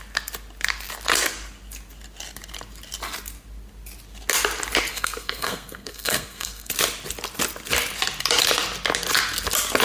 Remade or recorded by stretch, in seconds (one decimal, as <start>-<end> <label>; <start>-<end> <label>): 0.0-4.9 recorded; 4.9-6.7 remade; 6.7-9.8 recorded